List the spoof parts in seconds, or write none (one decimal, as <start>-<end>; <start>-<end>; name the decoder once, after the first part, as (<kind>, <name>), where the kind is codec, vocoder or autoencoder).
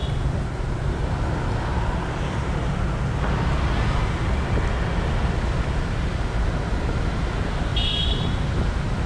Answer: 7.7-8.4 (vocoder, BigVGAN v2)